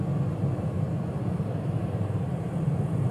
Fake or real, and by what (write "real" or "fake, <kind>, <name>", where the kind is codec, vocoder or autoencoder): fake, vocoder, BigVGAN v2